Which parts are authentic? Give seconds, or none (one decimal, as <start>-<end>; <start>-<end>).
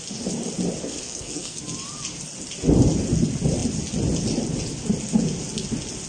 0.0-0.9; 1.6-6.1